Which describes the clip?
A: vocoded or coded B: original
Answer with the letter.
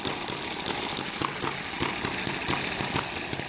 B